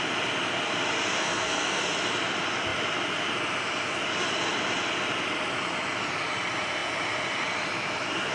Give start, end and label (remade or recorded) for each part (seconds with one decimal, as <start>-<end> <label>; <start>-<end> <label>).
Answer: 0.0-1.2 recorded; 1.2-1.8 remade; 1.8-8.3 recorded